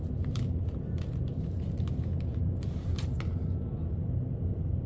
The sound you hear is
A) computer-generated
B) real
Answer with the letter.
B